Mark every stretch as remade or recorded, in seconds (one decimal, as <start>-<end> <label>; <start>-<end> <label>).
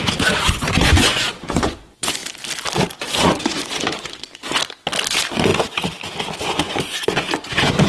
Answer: 0.0-2.2 remade; 2.2-2.8 recorded; 2.8-4.6 remade; 4.6-5.1 recorded; 5.1-5.5 remade; 5.5-6.4 recorded; 6.4-7.9 remade